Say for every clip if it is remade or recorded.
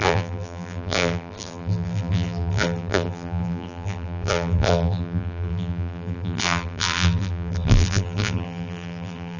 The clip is remade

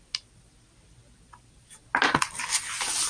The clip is recorded